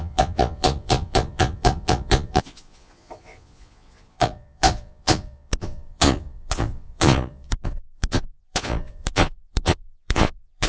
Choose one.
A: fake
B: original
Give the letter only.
A